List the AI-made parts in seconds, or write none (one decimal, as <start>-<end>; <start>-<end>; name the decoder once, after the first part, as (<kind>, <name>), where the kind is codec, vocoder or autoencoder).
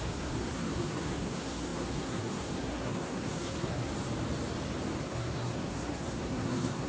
0.0-3.9 (codec, SNAC); 5.0-6.9